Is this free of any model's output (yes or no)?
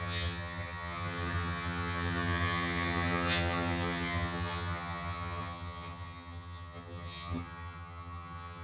no